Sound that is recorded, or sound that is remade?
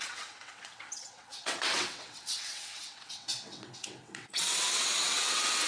remade